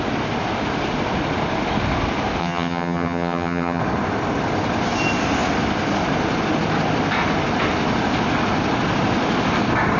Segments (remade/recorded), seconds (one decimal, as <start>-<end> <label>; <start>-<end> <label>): 0.0-2.4 recorded; 2.4-3.8 remade; 3.8-10.0 recorded